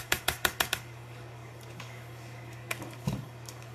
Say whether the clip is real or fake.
fake